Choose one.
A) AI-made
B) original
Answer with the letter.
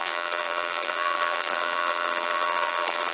A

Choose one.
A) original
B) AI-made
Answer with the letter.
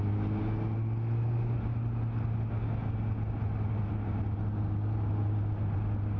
A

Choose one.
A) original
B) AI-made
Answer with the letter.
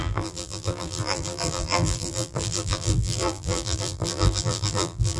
B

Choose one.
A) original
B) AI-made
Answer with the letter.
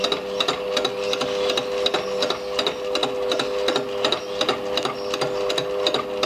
A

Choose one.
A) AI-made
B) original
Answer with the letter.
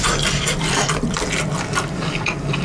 B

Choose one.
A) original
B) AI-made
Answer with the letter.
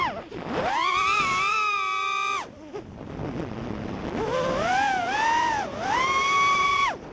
B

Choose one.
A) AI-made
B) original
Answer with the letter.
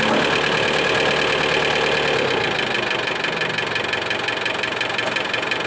B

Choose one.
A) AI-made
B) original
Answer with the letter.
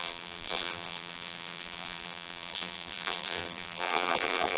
A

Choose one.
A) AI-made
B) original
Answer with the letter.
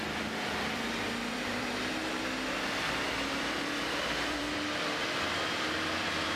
A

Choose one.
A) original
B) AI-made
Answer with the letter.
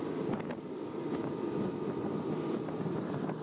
A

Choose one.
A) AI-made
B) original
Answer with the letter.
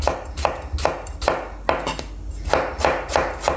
B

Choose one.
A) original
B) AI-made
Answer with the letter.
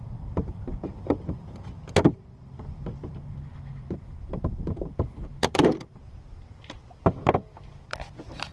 B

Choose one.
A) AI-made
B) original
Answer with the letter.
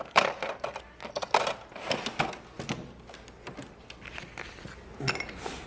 B